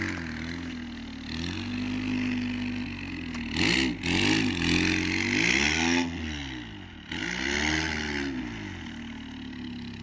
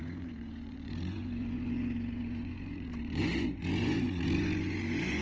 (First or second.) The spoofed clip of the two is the second